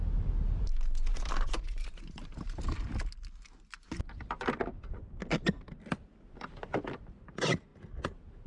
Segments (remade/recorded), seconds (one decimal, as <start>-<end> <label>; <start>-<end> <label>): 0.0-1.1 recorded; 1.1-2.7 remade; 2.7-8.5 recorded

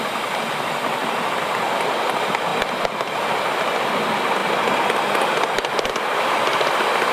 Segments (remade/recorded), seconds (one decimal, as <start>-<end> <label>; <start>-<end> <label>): 0.0-7.1 recorded

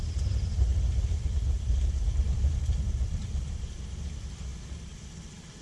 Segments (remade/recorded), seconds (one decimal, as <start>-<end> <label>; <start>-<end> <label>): 0.0-5.6 recorded

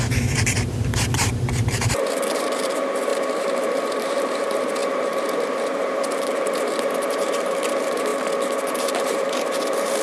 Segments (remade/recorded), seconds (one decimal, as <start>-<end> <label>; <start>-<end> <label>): 0.0-8.1 remade; 8.1-8.7 recorded; 8.7-10.0 remade

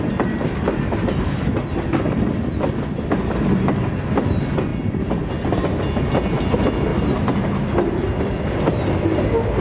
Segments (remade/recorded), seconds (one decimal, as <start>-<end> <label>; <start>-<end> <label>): 0.0-4.7 recorded; 4.7-5.3 remade; 5.3-9.6 recorded

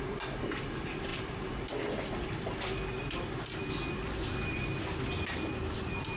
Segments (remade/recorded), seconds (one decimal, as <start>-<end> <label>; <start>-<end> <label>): 0.0-6.2 recorded

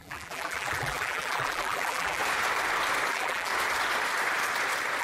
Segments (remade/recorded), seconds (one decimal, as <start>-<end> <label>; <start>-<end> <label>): 0.0-2.2 remade; 2.2-3.1 recorded; 3.1-3.5 remade; 3.5-5.0 recorded